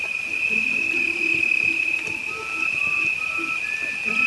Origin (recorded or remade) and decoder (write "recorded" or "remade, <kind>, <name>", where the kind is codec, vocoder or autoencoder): recorded